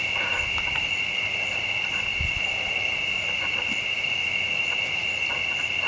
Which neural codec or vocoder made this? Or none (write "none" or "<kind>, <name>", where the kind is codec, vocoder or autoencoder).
none